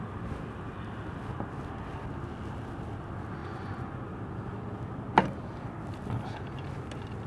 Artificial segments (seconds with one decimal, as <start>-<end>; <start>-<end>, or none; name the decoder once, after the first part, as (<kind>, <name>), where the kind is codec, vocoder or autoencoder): 3.4-4.1 (vocoder, Vocos)

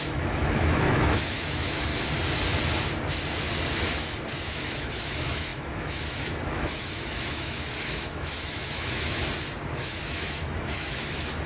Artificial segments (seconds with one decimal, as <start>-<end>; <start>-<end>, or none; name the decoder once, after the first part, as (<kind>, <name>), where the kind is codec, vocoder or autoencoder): 0.0-1.9 (autoencoder, DAC-VAE); 4.4-9.2; 9.8-11.5

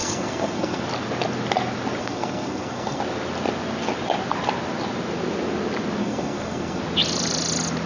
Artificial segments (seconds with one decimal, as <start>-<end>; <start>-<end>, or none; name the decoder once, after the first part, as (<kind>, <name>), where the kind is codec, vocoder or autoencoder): 0.0-0.8 (codec, SNAC); 2.0-3.0; 6.0-6.8

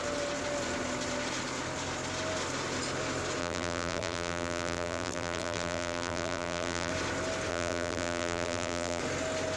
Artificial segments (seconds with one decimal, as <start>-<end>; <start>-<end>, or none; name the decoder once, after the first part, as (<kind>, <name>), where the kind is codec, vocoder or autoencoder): 3.4-6.9 (vocoder, BigVGAN v2); 7.5-9.0

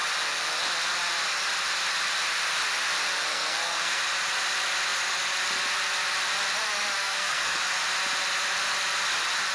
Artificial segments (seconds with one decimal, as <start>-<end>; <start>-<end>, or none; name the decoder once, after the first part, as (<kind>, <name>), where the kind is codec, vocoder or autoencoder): 3.3-4.0 (codec, SNAC); 7.0-7.6